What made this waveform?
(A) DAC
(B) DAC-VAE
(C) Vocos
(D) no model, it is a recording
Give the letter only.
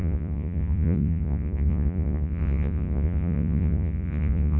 C